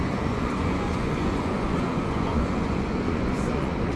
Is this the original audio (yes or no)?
no